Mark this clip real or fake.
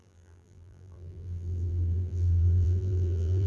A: fake